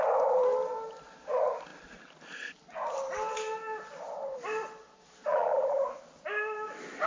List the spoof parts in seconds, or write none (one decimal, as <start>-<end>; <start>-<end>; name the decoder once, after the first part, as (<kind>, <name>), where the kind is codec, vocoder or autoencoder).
5.3-5.8 (vocoder, BigVGAN v2)